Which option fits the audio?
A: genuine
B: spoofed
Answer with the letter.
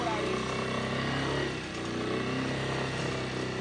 A